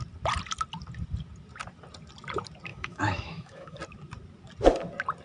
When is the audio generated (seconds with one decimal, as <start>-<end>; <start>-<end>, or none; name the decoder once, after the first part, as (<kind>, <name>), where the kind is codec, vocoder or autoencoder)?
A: 2.7-3.8 (autoencoder, DAC-VAE)